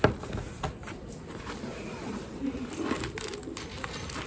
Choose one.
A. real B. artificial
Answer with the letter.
A